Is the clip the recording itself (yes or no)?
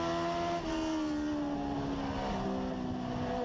yes